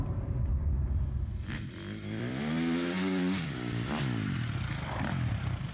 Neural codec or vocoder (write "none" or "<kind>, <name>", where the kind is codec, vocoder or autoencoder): vocoder, BigVGAN v2